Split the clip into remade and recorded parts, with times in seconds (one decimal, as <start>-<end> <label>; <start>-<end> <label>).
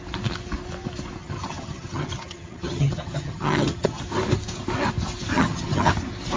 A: 0.0-1.2 recorded; 1.2-4.0 remade; 4.0-5.3 recorded; 5.3-5.9 remade; 5.9-6.4 recorded